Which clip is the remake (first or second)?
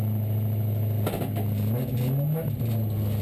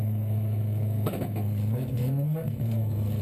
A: second